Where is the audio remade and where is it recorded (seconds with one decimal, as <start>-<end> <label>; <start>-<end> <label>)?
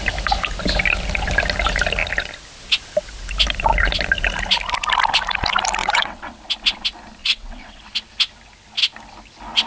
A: 0.0-5.8 recorded; 5.8-6.4 remade; 6.4-7.2 recorded; 7.2-7.8 remade; 7.8-9.7 recorded